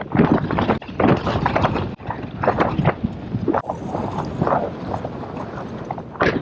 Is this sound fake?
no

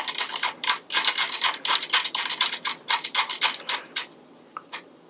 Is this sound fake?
yes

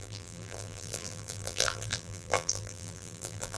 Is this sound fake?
yes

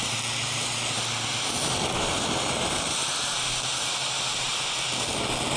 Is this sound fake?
no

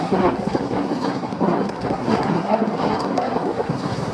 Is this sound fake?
yes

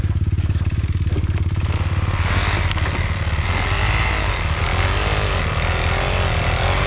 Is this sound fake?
no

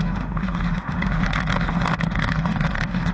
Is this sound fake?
yes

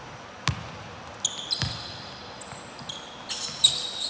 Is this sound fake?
no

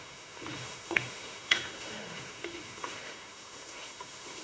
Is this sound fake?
yes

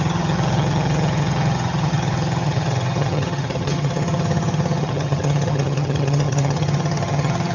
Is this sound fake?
yes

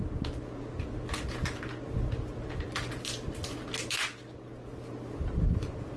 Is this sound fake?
no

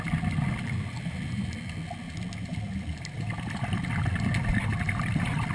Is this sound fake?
no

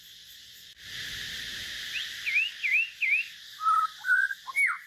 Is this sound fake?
no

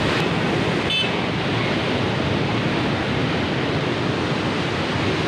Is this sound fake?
no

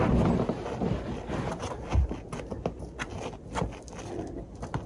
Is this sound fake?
no